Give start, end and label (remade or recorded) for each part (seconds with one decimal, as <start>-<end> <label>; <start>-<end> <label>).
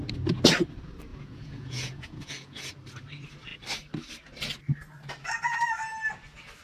0.0-1.1 recorded; 1.1-2.7 remade; 2.7-6.6 recorded